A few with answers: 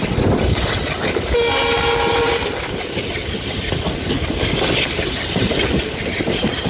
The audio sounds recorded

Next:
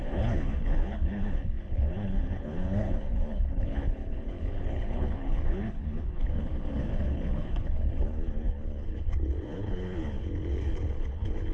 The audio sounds remade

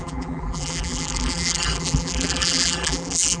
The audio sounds remade